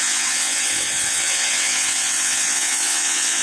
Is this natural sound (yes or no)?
no